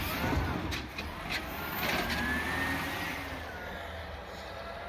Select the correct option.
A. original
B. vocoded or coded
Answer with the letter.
A